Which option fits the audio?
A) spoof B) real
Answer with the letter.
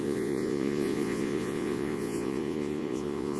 A